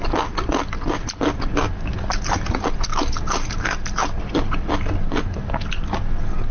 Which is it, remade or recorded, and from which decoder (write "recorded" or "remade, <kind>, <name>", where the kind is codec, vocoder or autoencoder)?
recorded